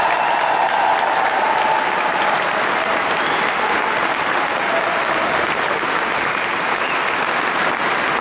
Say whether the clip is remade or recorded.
recorded